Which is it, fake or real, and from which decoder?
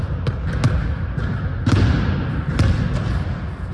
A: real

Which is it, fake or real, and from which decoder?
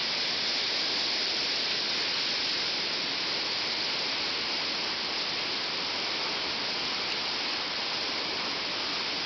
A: real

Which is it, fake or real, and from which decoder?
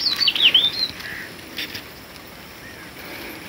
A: real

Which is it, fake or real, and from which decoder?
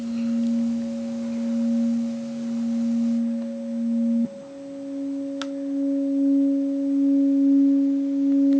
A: real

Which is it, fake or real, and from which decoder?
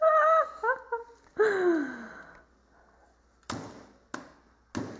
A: real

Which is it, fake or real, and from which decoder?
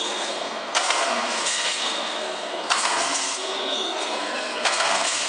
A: fake, codec, SNAC